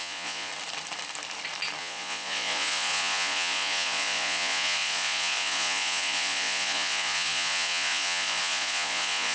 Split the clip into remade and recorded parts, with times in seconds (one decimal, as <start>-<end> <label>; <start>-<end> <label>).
0.0-0.5 remade; 0.5-1.8 recorded; 1.8-9.3 remade